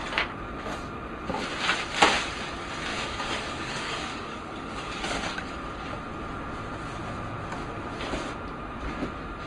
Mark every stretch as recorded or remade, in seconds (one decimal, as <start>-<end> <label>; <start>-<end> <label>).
0.0-2.9 recorded; 2.9-5.7 remade; 5.7-9.5 recorded